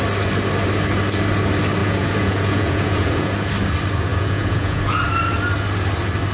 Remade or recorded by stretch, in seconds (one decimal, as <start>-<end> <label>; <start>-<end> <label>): 0.0-1.8 recorded; 1.8-3.5 remade; 3.5-4.1 recorded; 4.1-4.8 remade; 4.8-6.3 recorded